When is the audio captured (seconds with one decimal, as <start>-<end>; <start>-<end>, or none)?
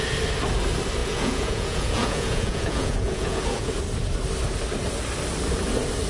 0.0-1.0; 3.7-6.1